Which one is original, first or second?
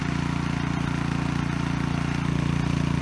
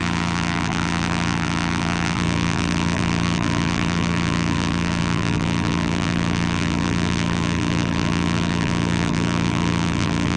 first